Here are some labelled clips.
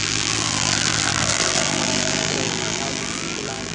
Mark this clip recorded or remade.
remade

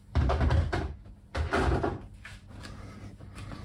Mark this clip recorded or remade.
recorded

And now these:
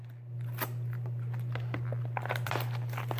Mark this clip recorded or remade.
remade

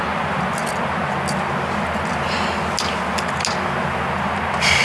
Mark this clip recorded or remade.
recorded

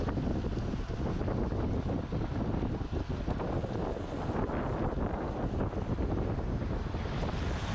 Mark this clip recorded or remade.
recorded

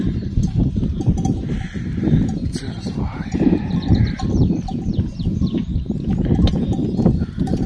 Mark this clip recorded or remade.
remade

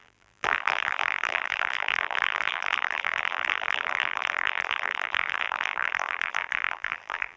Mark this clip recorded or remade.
remade